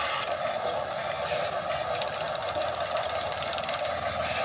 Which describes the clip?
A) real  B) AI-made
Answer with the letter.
A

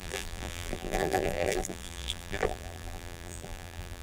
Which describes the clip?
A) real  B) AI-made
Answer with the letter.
B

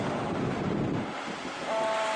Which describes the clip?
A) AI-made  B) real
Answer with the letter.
B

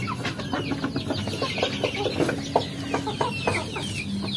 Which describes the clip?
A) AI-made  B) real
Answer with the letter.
B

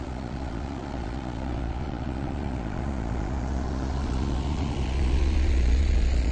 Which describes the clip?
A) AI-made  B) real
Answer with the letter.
A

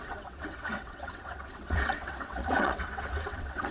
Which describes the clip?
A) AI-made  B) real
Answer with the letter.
A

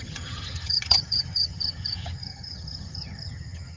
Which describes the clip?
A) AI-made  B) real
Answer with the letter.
A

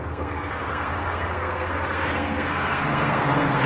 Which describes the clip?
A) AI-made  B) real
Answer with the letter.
A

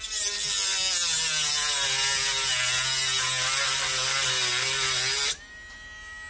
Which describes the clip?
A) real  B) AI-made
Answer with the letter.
A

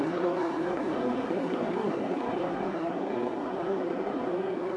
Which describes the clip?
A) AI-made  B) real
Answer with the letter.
A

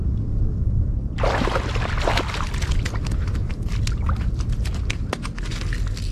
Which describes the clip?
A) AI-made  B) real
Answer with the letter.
B